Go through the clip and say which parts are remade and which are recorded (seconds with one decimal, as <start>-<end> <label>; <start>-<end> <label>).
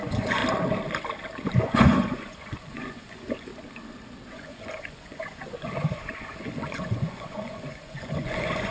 0.0-0.4 remade; 0.4-1.6 recorded; 1.6-3.5 remade; 3.5-4.3 recorded; 4.3-8.7 remade